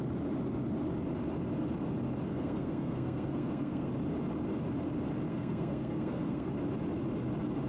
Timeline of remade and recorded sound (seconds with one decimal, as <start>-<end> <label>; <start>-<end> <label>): 0.0-2.3 recorded; 2.3-3.9 remade; 3.9-5.3 recorded; 5.3-6.5 remade; 6.5-7.7 recorded